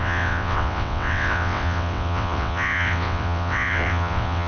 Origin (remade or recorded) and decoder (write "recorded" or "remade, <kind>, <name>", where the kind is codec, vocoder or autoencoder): remade, vocoder, WaveNeXt